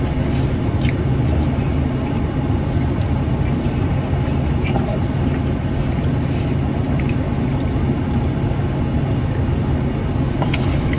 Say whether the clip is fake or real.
real